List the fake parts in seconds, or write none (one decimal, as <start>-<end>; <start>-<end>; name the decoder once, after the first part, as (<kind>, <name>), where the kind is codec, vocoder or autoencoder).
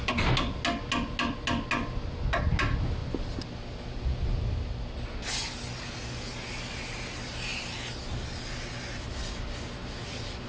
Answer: none